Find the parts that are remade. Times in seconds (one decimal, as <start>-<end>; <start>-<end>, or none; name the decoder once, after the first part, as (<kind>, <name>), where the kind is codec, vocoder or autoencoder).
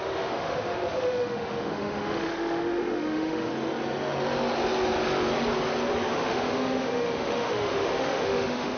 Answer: 0.0-3.5 (autoencoder, DAC-VAE); 6.1-8.8